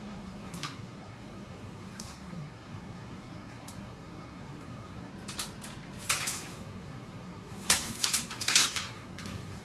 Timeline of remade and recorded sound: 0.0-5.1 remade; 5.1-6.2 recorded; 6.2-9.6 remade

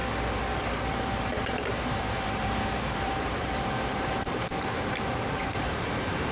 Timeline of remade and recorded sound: 0.0-0.9 recorded; 0.9-4.5 remade; 4.5-5.6 recorded; 5.6-6.3 remade

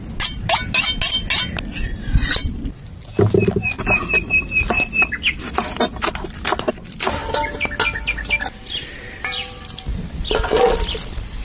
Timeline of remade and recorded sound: 0.0-11.4 recorded

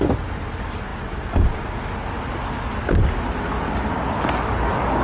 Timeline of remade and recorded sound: 0.0-5.0 recorded

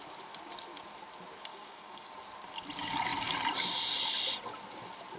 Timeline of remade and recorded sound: 0.0-1.5 recorded; 1.5-2.1 remade; 2.1-5.2 recorded

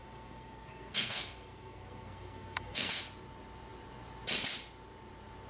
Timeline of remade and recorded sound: 0.0-3.0 remade; 3.0-5.5 recorded

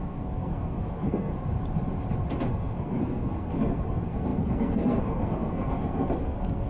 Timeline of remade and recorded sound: 0.0-1.3 remade; 1.3-2.5 recorded; 2.5-6.7 remade